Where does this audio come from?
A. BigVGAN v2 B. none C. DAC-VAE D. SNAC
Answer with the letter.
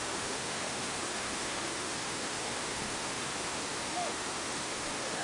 C